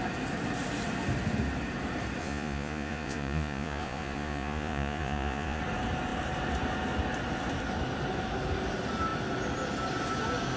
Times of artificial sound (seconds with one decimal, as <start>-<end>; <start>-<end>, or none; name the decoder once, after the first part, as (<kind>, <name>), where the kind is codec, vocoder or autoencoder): 2.2-5.6 (vocoder, Vocos)